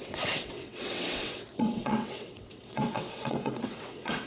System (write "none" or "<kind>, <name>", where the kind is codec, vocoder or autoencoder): vocoder, WaveNeXt